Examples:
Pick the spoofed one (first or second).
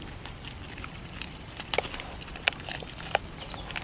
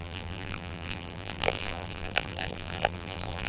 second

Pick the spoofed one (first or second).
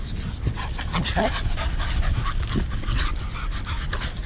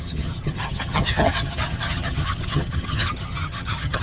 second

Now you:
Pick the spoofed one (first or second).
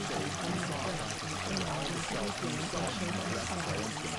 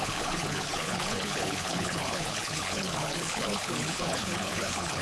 second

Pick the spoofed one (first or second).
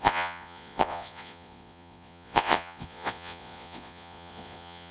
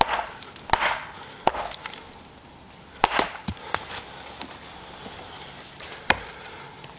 first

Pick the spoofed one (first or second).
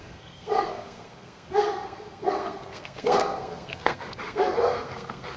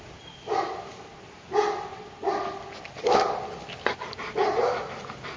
first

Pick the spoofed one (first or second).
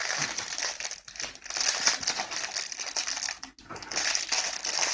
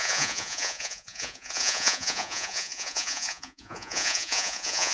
second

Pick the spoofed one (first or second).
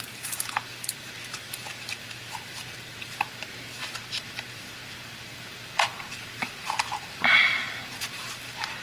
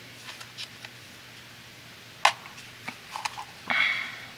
first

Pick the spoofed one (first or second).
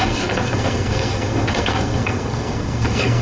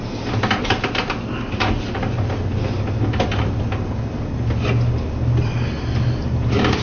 first